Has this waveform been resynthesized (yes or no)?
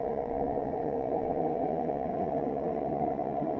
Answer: yes